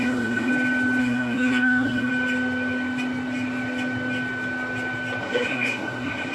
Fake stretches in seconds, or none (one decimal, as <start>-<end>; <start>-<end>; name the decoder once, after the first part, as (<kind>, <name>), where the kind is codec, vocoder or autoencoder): 0.0-0.5 (codec, SNAC); 1.0-2.1; 5.2-6.3